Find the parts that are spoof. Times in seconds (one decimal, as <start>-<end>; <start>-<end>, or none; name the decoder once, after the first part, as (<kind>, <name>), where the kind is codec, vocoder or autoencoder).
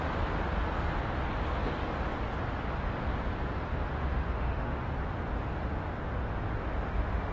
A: 4.1-4.8 (autoencoder, DAC-VAE)